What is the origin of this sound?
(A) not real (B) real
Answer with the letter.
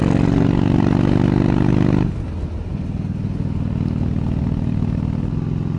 B